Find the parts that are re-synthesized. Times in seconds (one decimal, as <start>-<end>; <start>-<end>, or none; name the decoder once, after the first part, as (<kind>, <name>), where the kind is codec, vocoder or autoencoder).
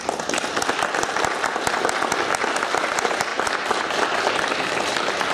none